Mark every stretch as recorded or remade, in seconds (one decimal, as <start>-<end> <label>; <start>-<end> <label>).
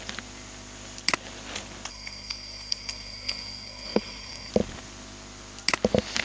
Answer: 0.0-1.9 recorded; 1.9-4.5 remade; 4.5-6.2 recorded